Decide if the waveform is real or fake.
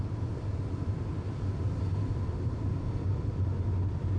real